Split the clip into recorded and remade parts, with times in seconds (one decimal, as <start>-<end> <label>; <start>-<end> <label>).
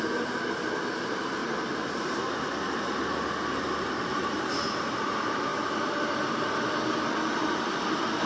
0.0-1.4 remade; 1.4-4.1 recorded; 4.1-5.5 remade; 5.5-8.3 recorded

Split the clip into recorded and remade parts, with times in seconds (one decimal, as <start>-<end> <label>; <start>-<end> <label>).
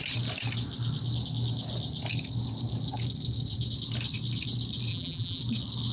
0.0-4.9 recorded; 4.9-5.4 remade; 5.4-5.9 recorded